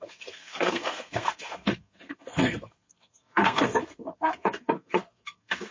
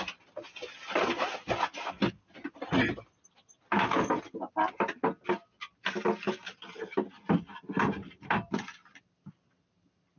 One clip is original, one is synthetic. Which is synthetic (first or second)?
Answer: first